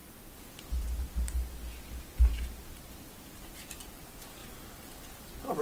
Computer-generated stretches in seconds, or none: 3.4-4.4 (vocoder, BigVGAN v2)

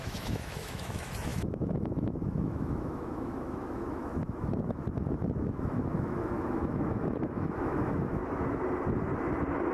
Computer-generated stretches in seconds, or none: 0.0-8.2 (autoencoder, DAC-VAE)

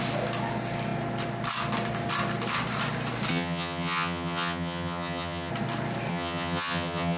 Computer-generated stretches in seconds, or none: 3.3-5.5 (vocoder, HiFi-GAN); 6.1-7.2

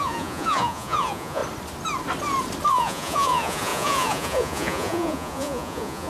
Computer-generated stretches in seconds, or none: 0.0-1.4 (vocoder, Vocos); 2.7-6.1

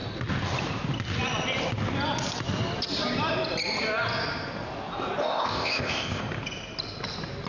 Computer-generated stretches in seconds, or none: 5.2-6.2 (codec, ZipCodec)

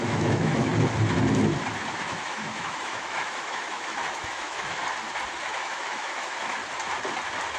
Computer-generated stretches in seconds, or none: 0.0-0.7 (autoencoder, DAC-VAE); 1.9-4.8; 5.4-6.6

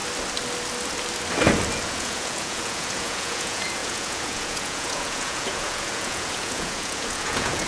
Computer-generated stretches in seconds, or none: 1.7-7.7 (vocoder, Vocos)